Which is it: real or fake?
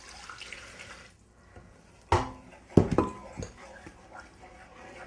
real